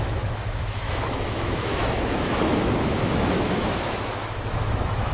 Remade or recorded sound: remade